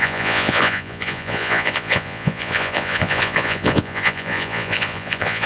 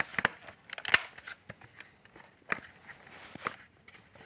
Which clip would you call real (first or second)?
second